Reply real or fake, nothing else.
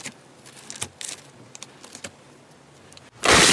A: real